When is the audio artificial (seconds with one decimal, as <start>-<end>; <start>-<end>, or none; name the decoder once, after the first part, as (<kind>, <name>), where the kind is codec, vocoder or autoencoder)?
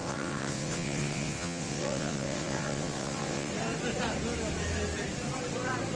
0.0-3.5 (vocoder, WaveNeXt)